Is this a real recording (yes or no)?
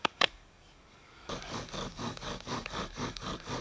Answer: no